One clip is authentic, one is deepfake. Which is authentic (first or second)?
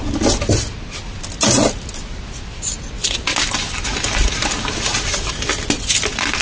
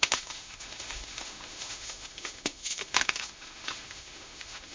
first